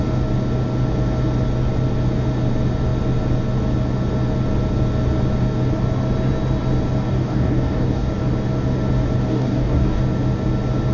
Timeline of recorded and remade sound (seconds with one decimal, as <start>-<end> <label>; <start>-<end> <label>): 0.0-7.1 recorded; 7.1-8.1 remade; 8.1-9.3 recorded; 9.3-10.0 remade; 10.0-10.9 recorded